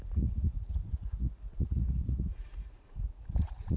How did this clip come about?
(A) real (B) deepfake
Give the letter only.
B